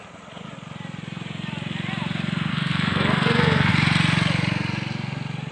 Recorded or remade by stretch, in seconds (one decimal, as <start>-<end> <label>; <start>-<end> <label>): 0.0-2.5 recorded; 2.5-3.7 remade; 3.7-5.5 recorded